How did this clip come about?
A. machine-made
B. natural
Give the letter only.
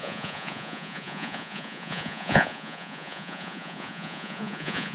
A